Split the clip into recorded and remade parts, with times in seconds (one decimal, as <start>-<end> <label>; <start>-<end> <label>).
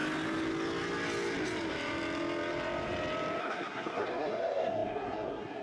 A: 0.0-3.4 recorded; 3.4-5.6 remade